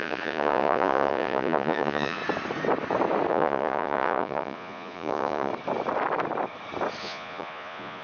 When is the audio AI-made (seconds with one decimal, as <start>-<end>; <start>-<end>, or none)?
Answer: 0.0-2.2; 3.3-5.5; 7.0-8.0

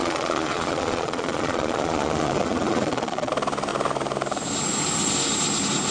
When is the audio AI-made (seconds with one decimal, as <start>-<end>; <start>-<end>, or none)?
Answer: 0.0-3.3

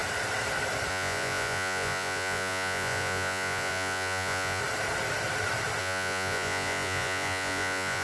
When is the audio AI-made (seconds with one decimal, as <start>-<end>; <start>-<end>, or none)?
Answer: 0.9-4.6; 5.8-8.0

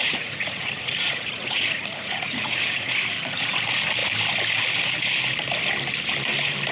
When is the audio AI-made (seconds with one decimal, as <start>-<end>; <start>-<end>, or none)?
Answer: 0.0-3.6

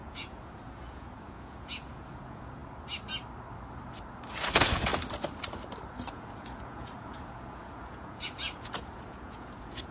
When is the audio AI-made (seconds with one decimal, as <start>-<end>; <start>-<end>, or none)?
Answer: 0.0-2.6; 4.5-4.9; 6.1-9.9

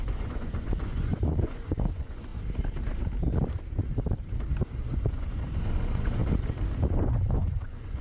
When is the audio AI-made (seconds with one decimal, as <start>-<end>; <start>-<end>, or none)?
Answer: 0.0-2.3; 4.8-6.2; 6.9-8.0

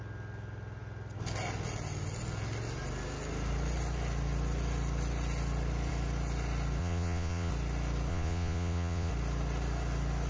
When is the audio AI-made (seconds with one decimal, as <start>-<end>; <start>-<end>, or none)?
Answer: 6.8-7.5; 8.1-9.1

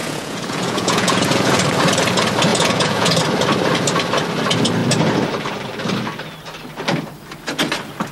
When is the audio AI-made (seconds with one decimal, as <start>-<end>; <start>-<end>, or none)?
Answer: 0.0-1.6; 2.5-3.2